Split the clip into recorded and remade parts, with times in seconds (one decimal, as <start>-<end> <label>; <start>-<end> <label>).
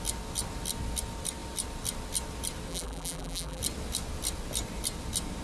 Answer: 0.0-2.7 recorded; 2.7-3.6 remade; 3.6-5.4 recorded